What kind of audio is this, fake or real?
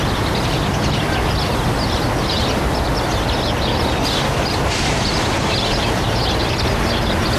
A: real